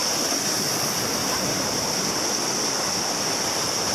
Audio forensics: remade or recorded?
recorded